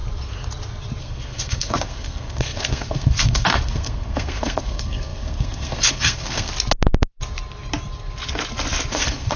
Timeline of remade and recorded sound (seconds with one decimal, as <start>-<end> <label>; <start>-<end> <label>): 0.0-1.0 recorded; 1.0-6.5 remade; 6.5-8.9 recorded; 8.9-9.4 remade